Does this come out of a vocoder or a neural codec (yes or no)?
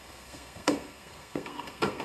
yes